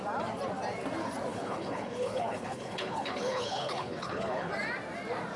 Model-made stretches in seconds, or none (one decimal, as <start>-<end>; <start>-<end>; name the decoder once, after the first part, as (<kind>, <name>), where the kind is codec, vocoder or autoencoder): 1.3-4.5 (codec, HILCodec)